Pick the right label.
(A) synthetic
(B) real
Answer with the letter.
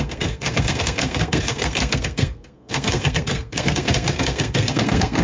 A